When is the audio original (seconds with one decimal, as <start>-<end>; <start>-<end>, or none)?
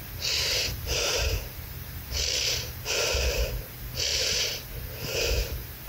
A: 2.1-4.1; 4.7-5.9